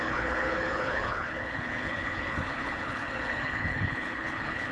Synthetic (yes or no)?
yes